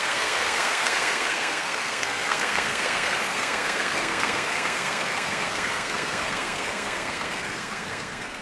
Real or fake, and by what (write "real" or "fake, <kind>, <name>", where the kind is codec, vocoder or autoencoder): fake, codec, SNAC